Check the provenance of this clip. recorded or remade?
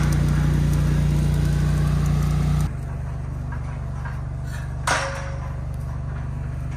recorded